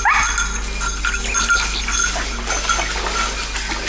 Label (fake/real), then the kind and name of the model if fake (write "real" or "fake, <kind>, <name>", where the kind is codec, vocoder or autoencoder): real